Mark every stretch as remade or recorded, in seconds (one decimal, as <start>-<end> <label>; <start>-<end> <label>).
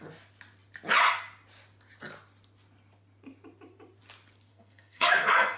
0.0-4.5 recorded; 4.5-5.6 remade